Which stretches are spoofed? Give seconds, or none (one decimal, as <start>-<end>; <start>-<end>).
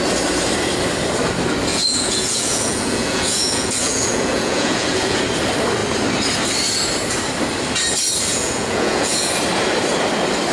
1.7-5.2; 8.3-9.3